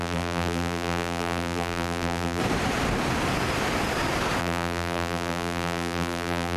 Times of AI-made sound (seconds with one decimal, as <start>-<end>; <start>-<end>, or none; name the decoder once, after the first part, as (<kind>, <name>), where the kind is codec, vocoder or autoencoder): 0.0-2.4 (vocoder, BigVGAN v2); 4.4-6.6